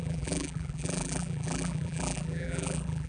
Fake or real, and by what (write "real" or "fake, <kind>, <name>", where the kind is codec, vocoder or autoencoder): fake, vocoder, BigVGAN v2